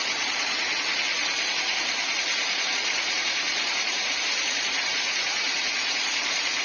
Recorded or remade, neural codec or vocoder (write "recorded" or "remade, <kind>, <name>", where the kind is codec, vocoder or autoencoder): remade, vocoder, Vocos